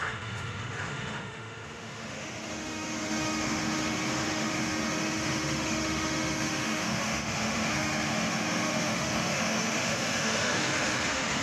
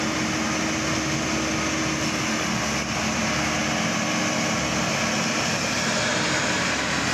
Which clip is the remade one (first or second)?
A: first